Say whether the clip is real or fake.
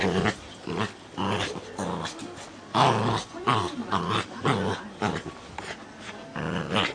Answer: real